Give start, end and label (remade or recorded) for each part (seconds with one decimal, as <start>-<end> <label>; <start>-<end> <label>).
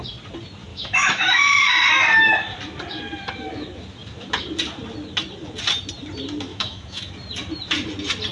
0.0-0.7 recorded; 0.7-1.7 remade; 1.7-6.5 recorded; 6.5-7.1 remade; 7.1-8.3 recorded